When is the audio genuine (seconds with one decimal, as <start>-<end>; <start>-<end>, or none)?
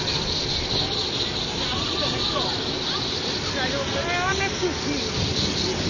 0.0-5.9